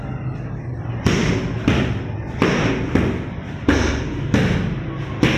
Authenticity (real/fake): real